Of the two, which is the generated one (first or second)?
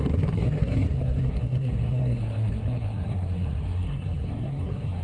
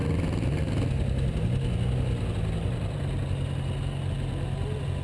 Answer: first